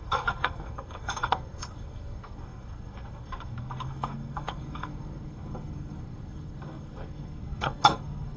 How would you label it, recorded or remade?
remade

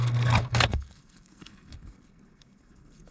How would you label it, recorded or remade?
remade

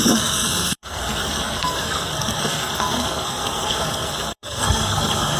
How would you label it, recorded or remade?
remade